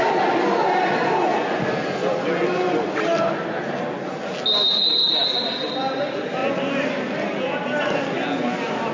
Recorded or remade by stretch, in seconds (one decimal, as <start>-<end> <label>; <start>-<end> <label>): 0.0-8.9 recorded

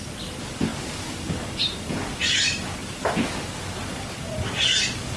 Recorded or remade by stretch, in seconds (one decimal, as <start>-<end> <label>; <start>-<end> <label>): 0.0-5.2 recorded

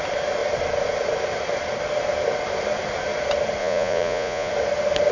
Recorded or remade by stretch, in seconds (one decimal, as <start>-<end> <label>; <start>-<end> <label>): 0.0-3.6 recorded; 3.6-4.5 remade; 4.5-5.1 recorded

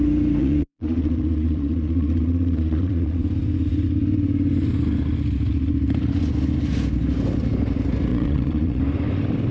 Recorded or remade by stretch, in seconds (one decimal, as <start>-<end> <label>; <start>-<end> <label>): 0.0-0.4 recorded; 0.4-3.2 remade; 3.2-8.1 recorded; 8.1-8.8 remade; 8.8-9.5 recorded

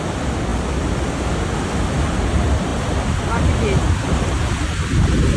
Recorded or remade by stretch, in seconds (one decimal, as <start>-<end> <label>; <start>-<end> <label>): 0.0-5.4 recorded

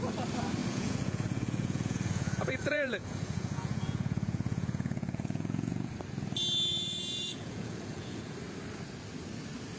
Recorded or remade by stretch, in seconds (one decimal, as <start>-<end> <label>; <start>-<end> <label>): 0.0-0.6 recorded; 0.6-5.9 remade; 5.9-6.7 recorded; 6.7-8.2 remade; 8.2-9.8 recorded

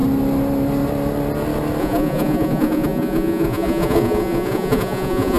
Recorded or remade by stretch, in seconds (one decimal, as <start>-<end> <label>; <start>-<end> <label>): 0.0-1.8 recorded; 1.8-5.4 remade

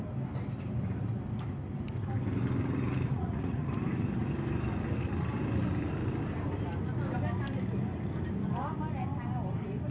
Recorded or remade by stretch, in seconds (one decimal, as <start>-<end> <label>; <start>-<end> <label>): 0.0-3.1 recorded; 3.1-3.7 remade; 3.7-9.9 recorded